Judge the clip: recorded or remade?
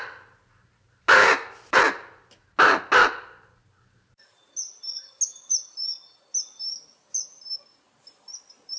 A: recorded